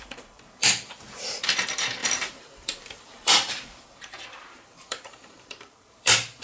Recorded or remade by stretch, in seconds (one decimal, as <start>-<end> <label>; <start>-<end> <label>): 0.0-6.4 remade